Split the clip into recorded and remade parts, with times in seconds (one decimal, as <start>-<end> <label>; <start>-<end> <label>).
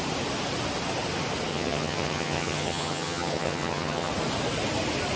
0.0-1.5 recorded; 1.5-4.1 remade; 4.1-5.2 recorded